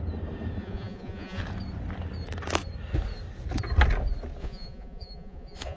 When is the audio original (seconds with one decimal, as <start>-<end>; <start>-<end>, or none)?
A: 0.0-0.6; 1.4-4.4

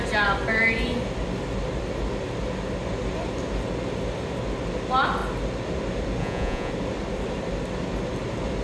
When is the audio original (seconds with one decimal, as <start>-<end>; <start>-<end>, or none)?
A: 0.0-6.2; 6.7-8.6

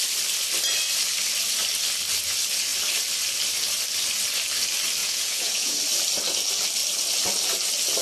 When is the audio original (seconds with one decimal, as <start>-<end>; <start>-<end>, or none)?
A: 0.0-5.0; 5.8-8.0

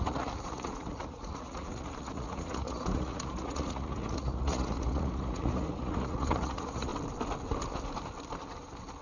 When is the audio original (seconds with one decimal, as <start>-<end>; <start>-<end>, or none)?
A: 6.9-9.0